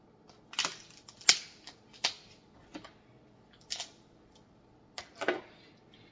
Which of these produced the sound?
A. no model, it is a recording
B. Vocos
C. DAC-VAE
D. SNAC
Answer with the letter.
A